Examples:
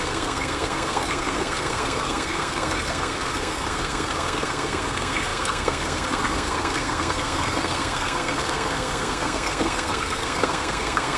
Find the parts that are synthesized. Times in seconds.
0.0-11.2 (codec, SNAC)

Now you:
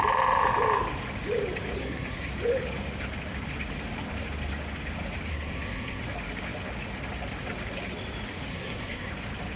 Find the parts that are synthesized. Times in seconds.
1.8-2.3 (codec, SNAC); 5.3-6.0; 8.5-9.1

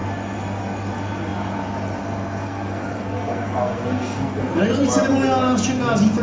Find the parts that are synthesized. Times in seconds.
2.4-4.6 (codec, SNAC)

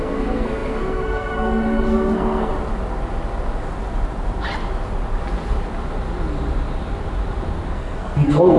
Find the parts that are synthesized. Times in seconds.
0.0-2.5 (codec, SNAC); 7.7-8.6

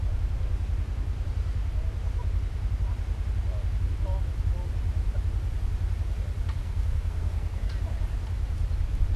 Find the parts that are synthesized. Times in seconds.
6.6-7.7 (codec, SNAC)

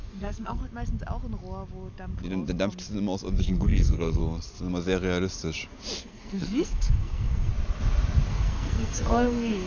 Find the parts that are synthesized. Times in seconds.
0.0-0.6 (codec, SNAC); 3.4-4.2; 6.0-7.5; 8.3-9.7